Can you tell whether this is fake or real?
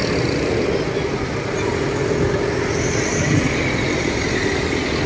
real